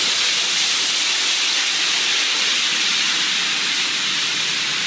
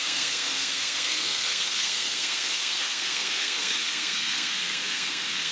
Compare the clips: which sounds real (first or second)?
first